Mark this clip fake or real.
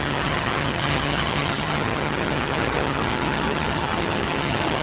fake